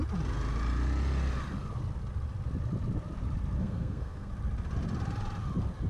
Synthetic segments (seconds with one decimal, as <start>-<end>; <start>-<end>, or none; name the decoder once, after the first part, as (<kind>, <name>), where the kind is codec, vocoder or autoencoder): 3.6-4.3 (codec, SNAC)